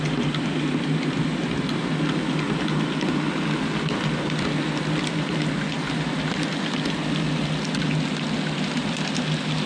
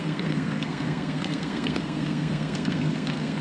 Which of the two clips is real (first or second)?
first